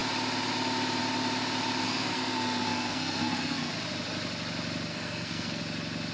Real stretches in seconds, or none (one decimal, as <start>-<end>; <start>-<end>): 0.0-1.8; 3.7-4.9; 5.6-6.1